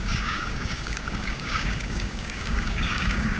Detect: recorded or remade remade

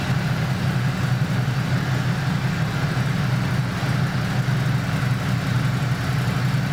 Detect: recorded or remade recorded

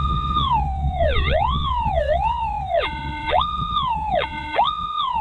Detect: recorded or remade remade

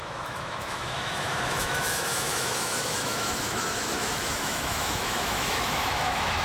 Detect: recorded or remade remade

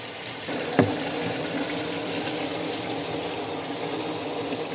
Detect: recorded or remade recorded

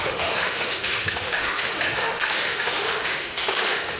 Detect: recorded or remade remade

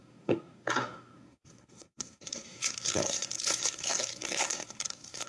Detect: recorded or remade remade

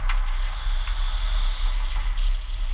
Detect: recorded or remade recorded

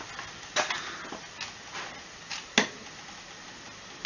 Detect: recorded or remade recorded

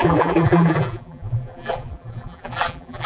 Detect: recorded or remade remade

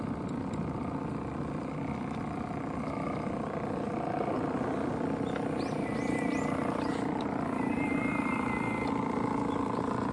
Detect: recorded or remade recorded